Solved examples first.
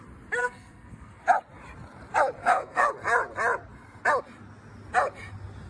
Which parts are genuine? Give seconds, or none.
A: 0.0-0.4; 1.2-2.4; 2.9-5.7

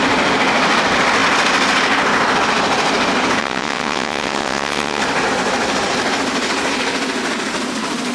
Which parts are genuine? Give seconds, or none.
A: 0.0-3.4; 5.0-8.1

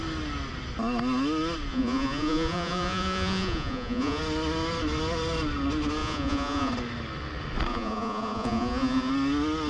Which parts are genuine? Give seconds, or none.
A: 0.0-1.7; 4.2-6.0; 6.7-7.7; 9.1-9.7

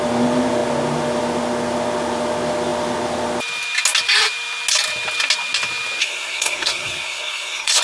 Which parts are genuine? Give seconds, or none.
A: 0.0-6.0

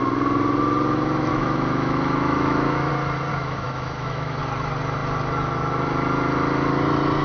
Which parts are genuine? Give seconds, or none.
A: 0.0-1.3; 2.9-3.3; 4.4-7.2

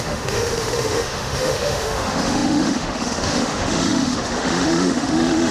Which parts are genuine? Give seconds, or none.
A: none